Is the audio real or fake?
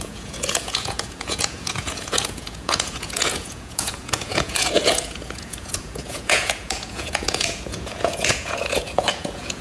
fake